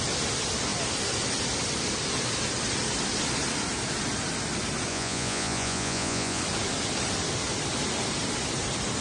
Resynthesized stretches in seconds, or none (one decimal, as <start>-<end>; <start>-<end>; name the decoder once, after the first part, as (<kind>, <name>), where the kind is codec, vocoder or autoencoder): 4.9-6.4 (vocoder, Vocos)